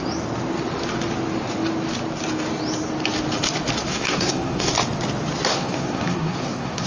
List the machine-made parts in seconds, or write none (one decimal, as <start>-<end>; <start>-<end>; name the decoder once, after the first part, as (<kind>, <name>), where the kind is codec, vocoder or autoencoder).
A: 3.9-4.7 (codec, SNAC); 5.5-6.9